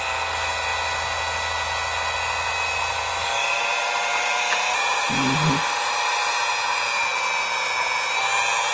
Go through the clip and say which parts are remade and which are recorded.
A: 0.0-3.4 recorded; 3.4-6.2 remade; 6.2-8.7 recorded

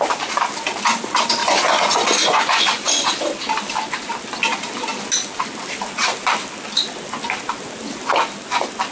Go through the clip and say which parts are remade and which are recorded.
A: 0.0-1.4 recorded; 1.4-3.1 remade; 3.1-8.9 recorded

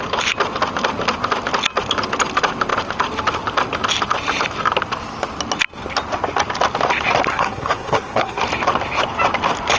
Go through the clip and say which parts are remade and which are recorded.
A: 0.0-7.3 recorded; 7.3-8.4 remade; 8.4-9.8 recorded